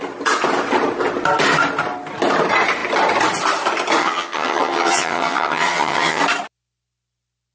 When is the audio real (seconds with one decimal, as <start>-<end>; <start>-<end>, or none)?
0.0-4.0; 6.2-7.5